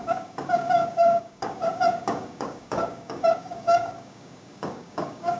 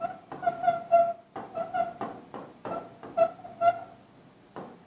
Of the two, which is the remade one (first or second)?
first